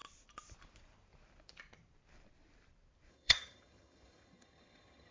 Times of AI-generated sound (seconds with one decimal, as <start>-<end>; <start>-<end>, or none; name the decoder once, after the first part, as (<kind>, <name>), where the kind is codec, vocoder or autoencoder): 3.1-5.1 (vocoder, HiFi-GAN)